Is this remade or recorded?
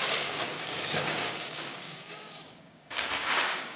remade